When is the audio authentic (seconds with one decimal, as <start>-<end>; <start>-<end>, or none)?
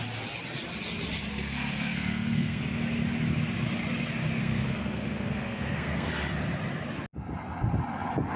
0.0-1.3; 2.6-4.4; 6.1-8.4